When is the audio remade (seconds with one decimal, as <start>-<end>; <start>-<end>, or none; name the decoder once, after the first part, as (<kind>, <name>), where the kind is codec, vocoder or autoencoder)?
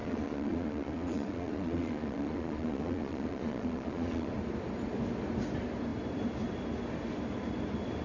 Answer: 0.0-4.3 (vocoder, Vocos)